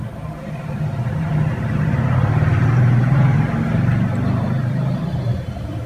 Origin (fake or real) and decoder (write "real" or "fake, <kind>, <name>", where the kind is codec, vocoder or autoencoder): fake, vocoder, BigVGAN v2